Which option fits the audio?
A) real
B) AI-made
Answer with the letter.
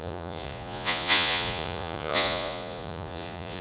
B